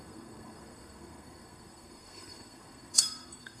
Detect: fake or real fake